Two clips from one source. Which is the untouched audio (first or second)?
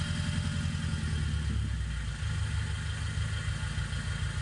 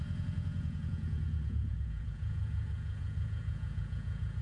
first